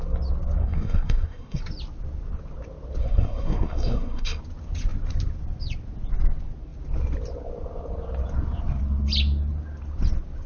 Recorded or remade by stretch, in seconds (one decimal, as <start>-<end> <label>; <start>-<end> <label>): 0.0-0.6 recorded; 0.6-1.6 remade; 1.6-3.0 recorded; 3.0-4.4 remade; 4.4-10.5 recorded